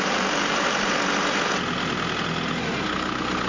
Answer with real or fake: real